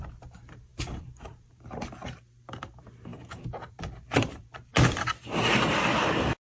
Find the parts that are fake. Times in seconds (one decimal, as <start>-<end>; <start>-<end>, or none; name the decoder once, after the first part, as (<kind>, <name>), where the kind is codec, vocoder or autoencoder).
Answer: 0.0-4.7 (vocoder, BigVGAN v2)